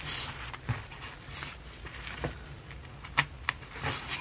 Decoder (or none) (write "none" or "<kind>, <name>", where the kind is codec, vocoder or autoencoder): none